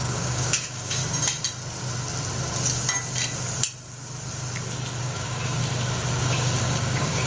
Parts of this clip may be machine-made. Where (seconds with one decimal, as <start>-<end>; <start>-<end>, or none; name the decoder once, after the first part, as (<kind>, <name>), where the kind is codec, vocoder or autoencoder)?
0.0-1.0 (codec, DAC); 5.0-5.6; 6.2-7.3